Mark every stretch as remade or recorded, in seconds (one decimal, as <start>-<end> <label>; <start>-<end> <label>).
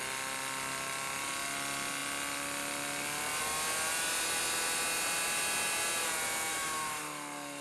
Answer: 0.0-6.5 recorded; 6.5-7.0 remade; 7.0-7.6 recorded